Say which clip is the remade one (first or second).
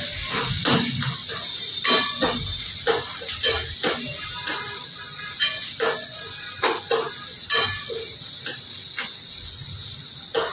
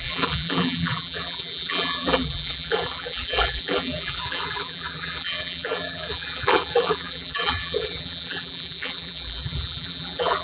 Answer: second